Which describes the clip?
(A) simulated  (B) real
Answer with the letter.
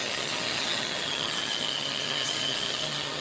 A